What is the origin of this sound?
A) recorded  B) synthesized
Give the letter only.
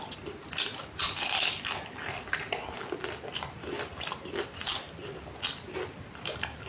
A